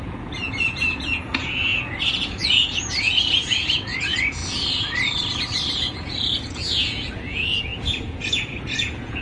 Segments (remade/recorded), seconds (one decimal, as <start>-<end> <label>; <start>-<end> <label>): 0.0-4.4 remade; 4.4-5.7 recorded; 5.7-9.2 remade